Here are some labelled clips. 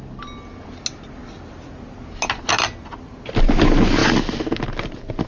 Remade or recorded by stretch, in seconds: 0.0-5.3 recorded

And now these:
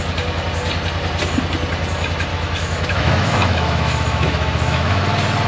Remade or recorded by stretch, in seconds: 0.0-2.3 recorded; 2.3-5.0 remade; 5.0-5.5 recorded

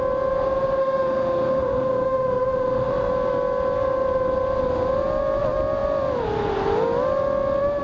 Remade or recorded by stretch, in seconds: 0.0-0.8 recorded; 0.8-3.1 remade; 3.1-7.8 recorded

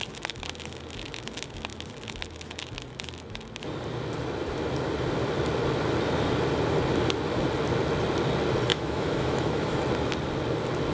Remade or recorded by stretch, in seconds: 0.0-8.7 recorded; 8.7-9.8 remade; 9.8-10.9 recorded

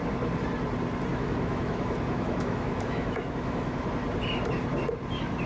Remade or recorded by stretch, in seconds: 0.0-1.1 recorded; 1.1-3.9 remade; 3.9-5.5 recorded